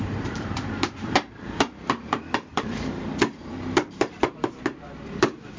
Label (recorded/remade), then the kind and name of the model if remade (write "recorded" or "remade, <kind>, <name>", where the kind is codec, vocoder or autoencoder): remade, vocoder, BigVGAN v2